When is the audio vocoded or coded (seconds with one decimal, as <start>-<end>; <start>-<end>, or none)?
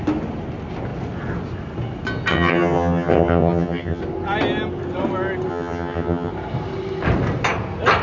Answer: 2.3-4.0; 5.5-6.3